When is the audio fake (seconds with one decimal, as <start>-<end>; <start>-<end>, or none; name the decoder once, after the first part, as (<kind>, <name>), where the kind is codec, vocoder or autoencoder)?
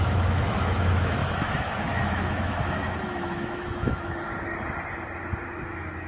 0.0-4.3 (autoencoder, DAC-VAE); 5.6-6.1